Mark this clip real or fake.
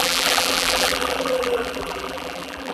fake